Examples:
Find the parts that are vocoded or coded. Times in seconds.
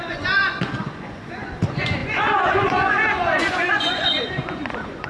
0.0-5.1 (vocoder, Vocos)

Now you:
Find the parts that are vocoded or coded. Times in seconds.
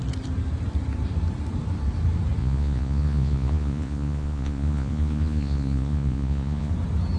2.4-6.7 (vocoder, Vocos)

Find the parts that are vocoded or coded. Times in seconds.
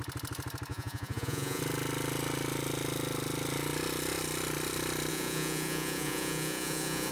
0.7-1.6 (vocoder, Vocos); 5.1-7.1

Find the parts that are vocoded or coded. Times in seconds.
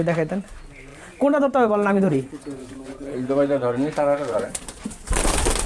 0.9-2.4 (vocoder, Vocos); 2.9-4.6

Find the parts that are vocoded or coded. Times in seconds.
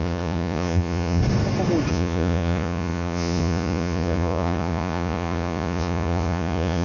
0.0-1.2 (vocoder, Vocos); 1.9-6.8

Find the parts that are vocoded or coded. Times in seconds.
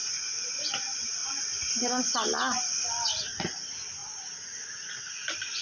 4.0-5.1 (vocoder, Vocos)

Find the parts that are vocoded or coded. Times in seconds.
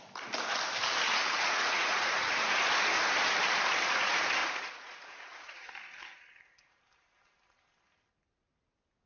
1.2-2.5 (vocoder, Vocos); 4.4-5.7